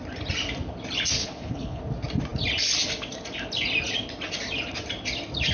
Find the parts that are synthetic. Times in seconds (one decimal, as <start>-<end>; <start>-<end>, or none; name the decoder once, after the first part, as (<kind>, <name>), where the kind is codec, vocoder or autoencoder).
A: 1.2-1.8 (codec, HILCodec)